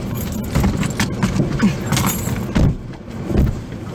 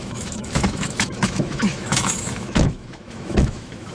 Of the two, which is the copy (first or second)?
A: second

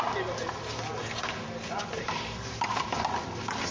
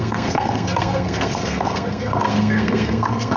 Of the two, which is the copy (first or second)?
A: second